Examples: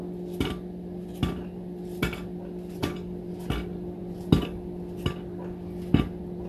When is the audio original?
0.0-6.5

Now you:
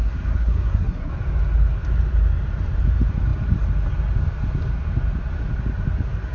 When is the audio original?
1.1-6.3

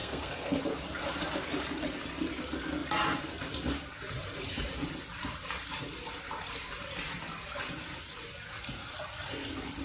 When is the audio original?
0.6-9.8

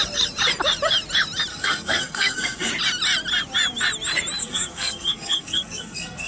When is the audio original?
0.0-1.5; 2.7-4.4

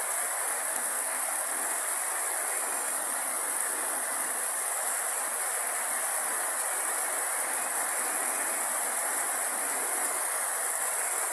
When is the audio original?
0.0-0.7; 1.2-11.3